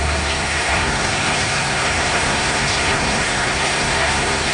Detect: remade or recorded remade